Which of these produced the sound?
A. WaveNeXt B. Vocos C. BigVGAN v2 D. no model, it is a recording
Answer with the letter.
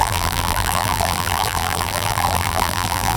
C